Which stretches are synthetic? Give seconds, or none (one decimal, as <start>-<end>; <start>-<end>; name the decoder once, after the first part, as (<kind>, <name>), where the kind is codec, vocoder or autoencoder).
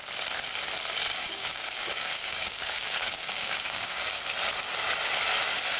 1.1-4.2 (codec, DAC)